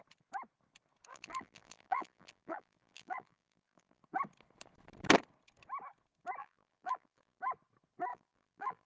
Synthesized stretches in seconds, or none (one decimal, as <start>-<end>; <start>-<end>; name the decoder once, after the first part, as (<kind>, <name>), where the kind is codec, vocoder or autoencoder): 1.1-4.0 (vocoder, BigVGAN v2); 6.4-7.4; 8.1-8.9